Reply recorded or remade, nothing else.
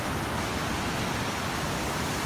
recorded